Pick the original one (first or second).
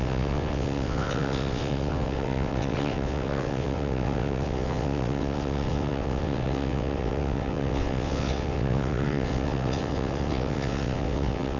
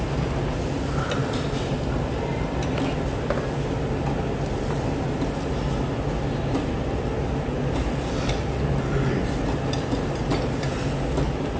second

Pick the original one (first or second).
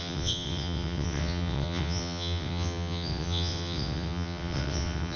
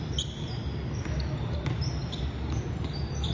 second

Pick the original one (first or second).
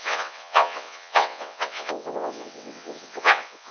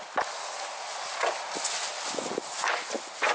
second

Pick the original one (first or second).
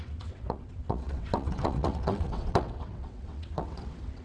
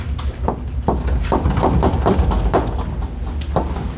second